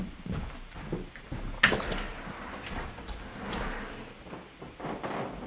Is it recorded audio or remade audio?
recorded